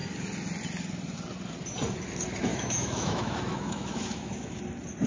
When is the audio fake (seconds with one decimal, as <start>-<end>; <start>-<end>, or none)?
2.5-4.6

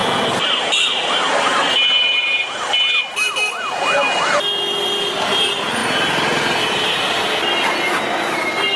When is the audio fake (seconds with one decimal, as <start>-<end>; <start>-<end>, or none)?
none

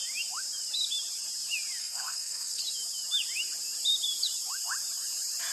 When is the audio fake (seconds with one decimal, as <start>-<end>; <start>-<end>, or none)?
1.8-2.6